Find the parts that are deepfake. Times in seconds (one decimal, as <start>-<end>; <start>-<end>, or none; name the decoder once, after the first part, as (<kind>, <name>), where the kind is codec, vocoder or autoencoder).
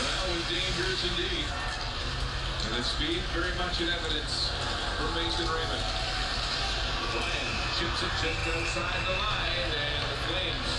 0.9-1.5 (autoencoder, DAC-VAE)